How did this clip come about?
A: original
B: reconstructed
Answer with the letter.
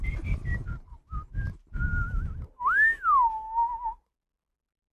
A